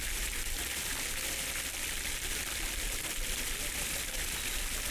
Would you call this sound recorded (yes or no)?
yes